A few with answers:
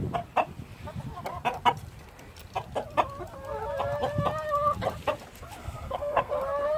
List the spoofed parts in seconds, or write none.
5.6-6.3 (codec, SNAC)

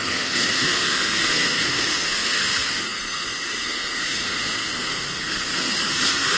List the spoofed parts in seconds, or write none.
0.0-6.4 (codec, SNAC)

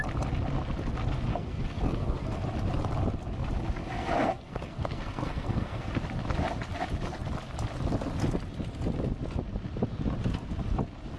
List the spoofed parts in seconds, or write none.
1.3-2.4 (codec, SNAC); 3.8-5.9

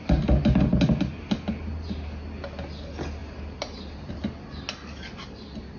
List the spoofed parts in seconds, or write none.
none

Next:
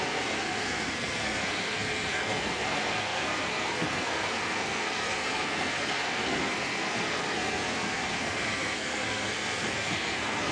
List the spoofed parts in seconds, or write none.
0.0-10.5 (codec, SNAC)